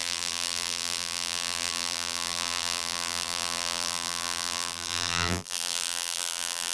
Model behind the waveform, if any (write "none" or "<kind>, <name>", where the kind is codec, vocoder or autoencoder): vocoder, BigVGAN v2